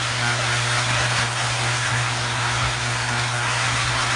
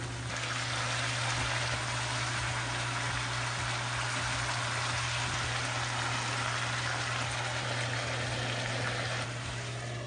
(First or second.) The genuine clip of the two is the second